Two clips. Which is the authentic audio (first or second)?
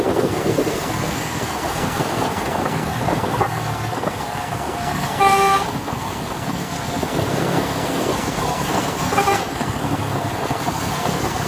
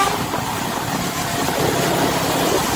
second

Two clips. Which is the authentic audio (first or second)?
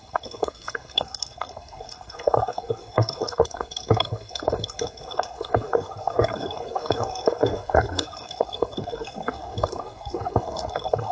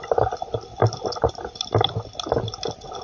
second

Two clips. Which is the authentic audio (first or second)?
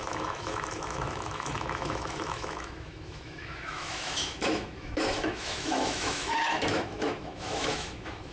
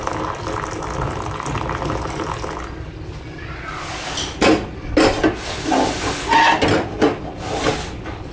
second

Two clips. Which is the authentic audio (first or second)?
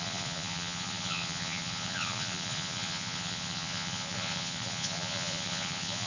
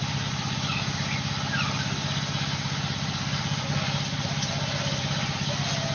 second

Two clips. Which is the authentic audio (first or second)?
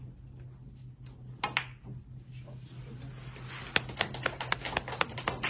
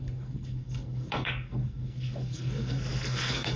first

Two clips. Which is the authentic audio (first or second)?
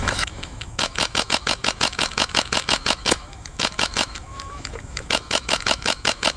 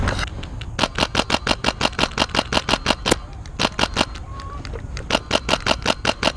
second